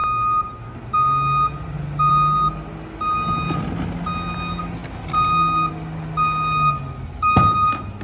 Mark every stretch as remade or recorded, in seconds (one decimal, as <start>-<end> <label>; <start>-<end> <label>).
0.0-8.0 recorded